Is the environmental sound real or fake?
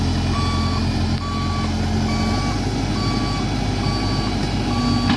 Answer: real